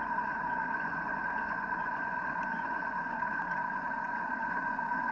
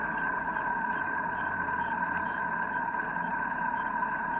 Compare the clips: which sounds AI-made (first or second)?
first